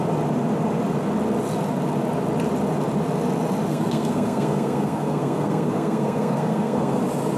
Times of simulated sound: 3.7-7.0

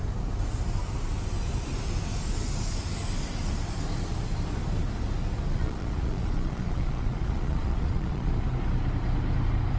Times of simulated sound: 5.5-8.3

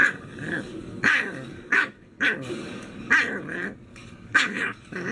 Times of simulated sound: 0.0-3.1; 3.9-5.1

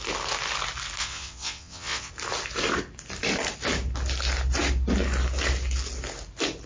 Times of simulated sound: 1.0-2.1

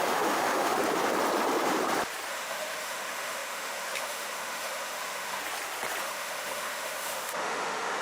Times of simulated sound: 0.0-0.8; 2.3-5.4; 6.0-8.0